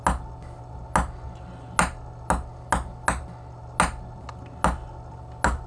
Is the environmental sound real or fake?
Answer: real